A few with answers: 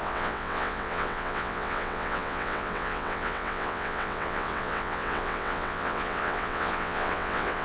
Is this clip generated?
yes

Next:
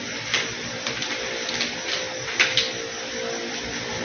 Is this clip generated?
no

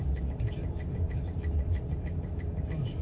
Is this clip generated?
no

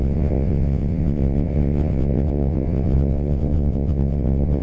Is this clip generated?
yes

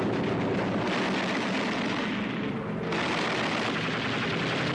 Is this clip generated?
no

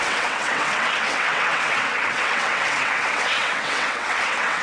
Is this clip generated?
yes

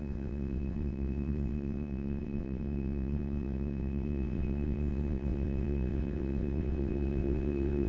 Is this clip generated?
yes